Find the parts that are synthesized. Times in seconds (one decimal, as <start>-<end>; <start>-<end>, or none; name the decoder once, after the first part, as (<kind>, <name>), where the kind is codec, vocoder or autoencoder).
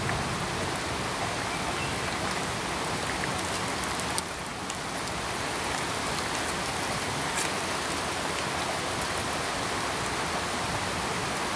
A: none